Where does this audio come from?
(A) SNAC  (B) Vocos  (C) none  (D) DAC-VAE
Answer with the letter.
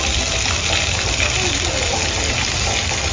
C